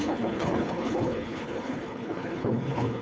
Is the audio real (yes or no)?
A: no